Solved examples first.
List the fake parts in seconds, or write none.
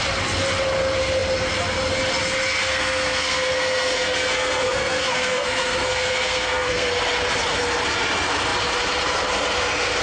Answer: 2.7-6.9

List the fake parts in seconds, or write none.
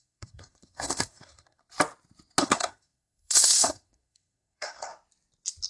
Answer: 0.0-1.6; 2.4-4.9